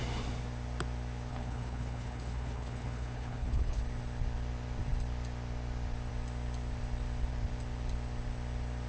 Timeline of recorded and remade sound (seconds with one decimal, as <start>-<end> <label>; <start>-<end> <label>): 0.0-1.3 recorded; 1.3-3.8 remade; 3.8-8.9 recorded